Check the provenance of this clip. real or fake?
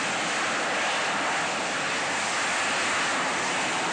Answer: real